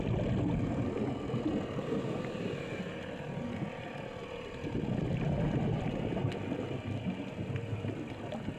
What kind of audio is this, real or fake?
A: real